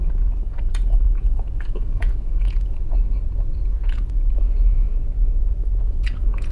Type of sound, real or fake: fake